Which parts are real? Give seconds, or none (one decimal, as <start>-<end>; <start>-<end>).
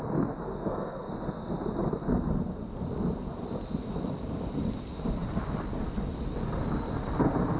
0.0-0.4; 1.1-7.6